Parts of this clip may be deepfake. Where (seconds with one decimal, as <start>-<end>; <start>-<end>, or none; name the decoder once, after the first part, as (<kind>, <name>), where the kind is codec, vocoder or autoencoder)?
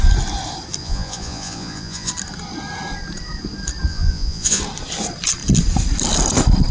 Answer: 0.8-2.1 (vocoder, Vocos); 3.9-4.6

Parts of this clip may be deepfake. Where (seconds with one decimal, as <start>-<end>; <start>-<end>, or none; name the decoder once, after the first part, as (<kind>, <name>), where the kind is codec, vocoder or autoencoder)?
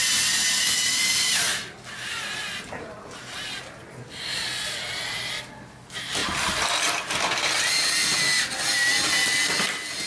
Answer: 4.3-4.8 (vocoder, Vocos)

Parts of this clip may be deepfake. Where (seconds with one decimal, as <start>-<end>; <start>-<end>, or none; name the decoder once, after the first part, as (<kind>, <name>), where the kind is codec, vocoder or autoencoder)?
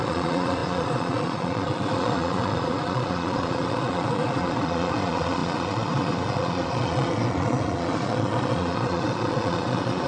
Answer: 0.0-10.1 (vocoder, Vocos)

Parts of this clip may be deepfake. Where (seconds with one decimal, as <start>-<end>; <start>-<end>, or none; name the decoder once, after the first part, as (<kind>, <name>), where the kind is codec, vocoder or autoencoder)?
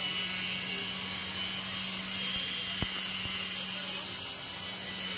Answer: none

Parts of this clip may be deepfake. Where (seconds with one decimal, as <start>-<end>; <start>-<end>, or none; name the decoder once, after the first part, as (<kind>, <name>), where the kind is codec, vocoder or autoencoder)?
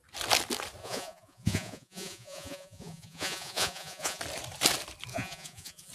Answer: 0.8-4.2 (vocoder, Vocos); 5.1-5.9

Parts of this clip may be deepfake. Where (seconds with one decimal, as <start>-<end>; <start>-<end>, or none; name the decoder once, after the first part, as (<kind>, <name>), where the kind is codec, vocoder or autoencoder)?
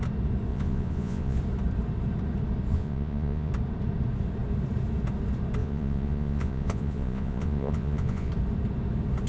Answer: 0.5-1.4 (vocoder, Vocos); 2.7-3.5; 5.6-8.3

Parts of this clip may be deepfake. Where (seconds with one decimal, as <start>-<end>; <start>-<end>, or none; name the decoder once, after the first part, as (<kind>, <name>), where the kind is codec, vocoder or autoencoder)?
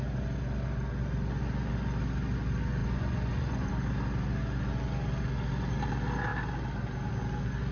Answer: 2.8-3.7 (vocoder, Vocos)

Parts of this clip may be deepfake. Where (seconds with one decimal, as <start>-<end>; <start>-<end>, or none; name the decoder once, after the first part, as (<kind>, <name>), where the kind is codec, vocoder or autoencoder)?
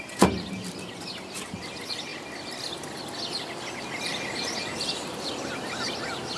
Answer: none